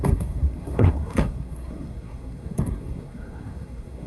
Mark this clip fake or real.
fake